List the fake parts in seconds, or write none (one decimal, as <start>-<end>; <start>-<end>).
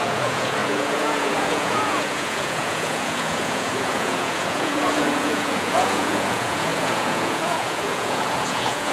0.0-8.9